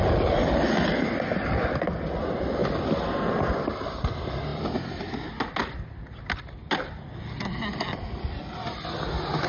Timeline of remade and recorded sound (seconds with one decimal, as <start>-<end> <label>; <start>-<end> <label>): 0.0-9.5 recorded